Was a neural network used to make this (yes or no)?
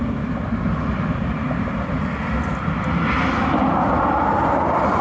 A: no